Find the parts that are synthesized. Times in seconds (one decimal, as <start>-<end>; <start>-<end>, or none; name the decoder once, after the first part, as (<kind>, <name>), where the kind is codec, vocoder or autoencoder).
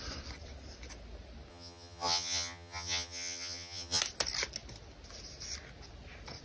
1.5-4.0 (vocoder, HiFi-GAN)